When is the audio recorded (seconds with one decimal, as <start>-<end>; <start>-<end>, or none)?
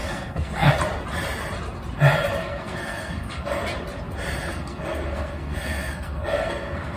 0.7-2.4; 3.6-4.5